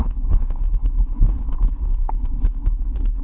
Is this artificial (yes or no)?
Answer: yes